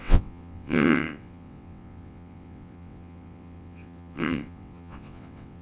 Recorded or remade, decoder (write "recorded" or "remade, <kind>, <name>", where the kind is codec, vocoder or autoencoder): remade, vocoder, WaveNeXt